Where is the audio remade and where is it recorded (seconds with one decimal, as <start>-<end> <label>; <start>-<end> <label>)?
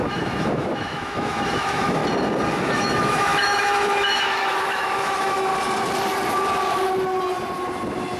0.0-2.0 remade; 2.0-2.6 recorded; 2.6-5.5 remade; 5.5-8.2 recorded